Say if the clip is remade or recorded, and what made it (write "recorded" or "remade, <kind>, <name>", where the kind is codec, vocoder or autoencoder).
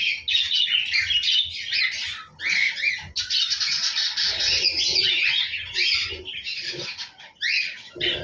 recorded